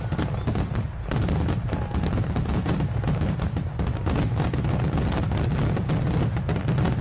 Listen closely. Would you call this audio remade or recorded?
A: recorded